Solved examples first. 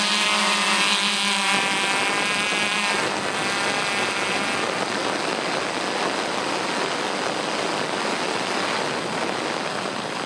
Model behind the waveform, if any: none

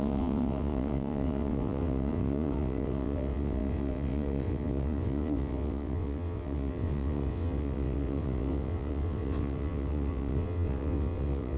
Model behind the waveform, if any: vocoder, WaveNeXt